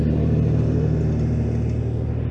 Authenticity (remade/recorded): recorded